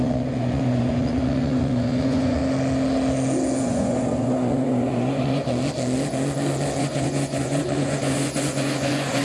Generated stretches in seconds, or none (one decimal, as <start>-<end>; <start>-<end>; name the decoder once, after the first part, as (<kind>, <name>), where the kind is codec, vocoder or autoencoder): 0.0-2.4 (vocoder, Vocos); 3.6-5.4; 6.8-9.2